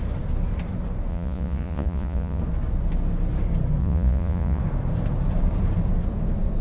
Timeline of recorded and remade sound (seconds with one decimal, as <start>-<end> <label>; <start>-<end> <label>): 0.0-1.1 recorded; 1.1-2.4 remade; 2.4-3.8 recorded; 3.8-4.6 remade; 4.6-6.6 recorded